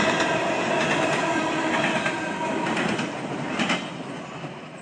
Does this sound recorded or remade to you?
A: recorded